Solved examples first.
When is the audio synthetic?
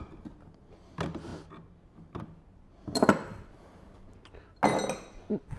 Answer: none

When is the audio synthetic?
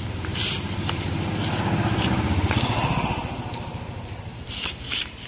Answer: none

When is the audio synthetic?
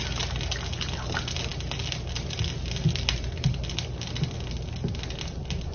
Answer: none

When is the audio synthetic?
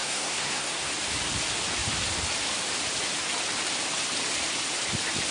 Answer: 0.0-0.9 (codec, SNAC)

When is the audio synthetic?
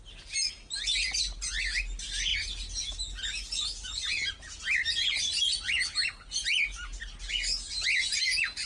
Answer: none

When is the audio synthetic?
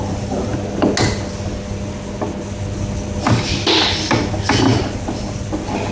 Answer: none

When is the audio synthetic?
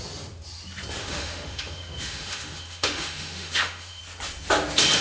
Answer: 1.0-4.0 (autoencoder, DAC-VAE)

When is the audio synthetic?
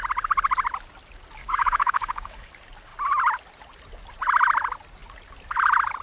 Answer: 1.4-2.5 (codec, DAC)